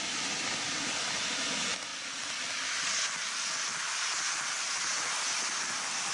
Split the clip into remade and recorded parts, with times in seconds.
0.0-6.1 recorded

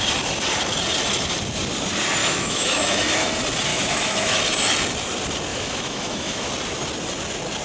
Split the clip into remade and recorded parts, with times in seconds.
0.0-2.2 recorded; 2.2-3.3 remade; 3.3-3.7 recorded; 3.7-4.4 remade; 4.4-5.5 recorded; 5.5-6.5 remade; 6.5-7.6 recorded

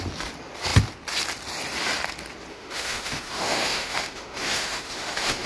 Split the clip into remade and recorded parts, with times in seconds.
0.0-2.5 recorded; 2.5-5.5 remade

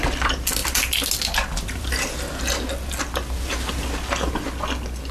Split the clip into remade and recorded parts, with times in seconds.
0.0-5.1 recorded

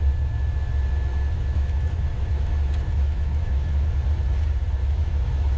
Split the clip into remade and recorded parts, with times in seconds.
0.0-1.1 recorded; 1.1-3.9 remade; 3.9-4.8 recorded; 4.8-5.6 remade

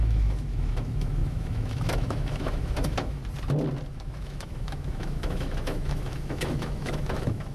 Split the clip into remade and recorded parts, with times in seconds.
0.0-3.2 remade; 3.2-3.9 recorded; 3.9-7.5 remade

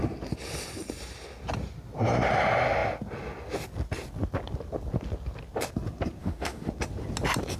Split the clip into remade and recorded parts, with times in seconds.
0.0-6.2 recorded; 6.2-6.7 remade; 6.7-7.6 recorded

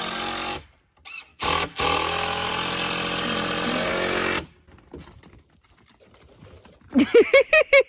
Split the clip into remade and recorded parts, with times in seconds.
0.0-1.3 recorded; 1.3-2.5 remade; 2.5-7.9 recorded